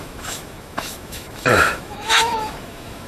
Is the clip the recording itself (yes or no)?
no